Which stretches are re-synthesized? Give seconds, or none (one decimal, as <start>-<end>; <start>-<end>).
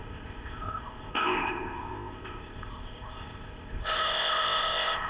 0.0-5.1